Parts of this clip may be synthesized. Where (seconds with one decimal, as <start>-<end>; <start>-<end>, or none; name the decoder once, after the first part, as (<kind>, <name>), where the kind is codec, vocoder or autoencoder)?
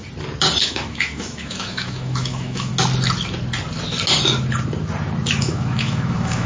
0.6-2.7 (autoencoder, DAC-VAE); 5.4-6.5